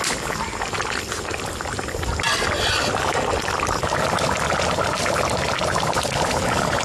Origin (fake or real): real